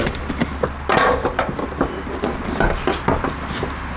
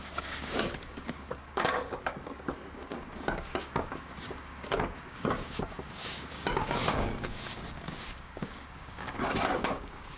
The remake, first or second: second